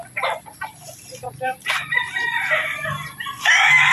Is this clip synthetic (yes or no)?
yes